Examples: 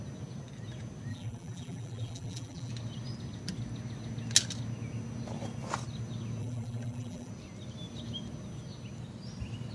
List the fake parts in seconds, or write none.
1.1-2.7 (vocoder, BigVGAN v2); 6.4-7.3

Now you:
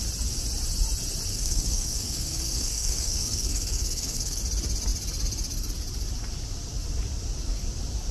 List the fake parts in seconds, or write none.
1.3-4.4 (codec, SNAC)

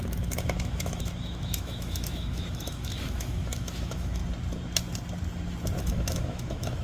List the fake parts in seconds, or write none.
0.0-4.2 (autoencoder, DAC-VAE); 5.8-6.8

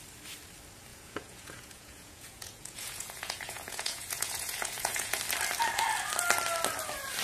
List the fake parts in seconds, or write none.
0.9-5.2 (vocoder, Vocos)